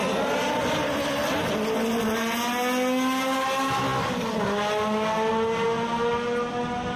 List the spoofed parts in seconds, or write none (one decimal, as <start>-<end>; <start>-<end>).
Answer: none